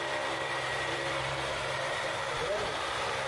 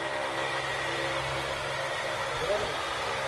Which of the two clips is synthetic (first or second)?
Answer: first